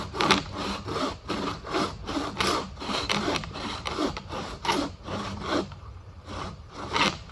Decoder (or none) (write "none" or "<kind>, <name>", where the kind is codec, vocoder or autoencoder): vocoder, BigVGAN v2